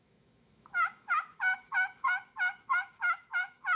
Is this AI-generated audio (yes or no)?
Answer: yes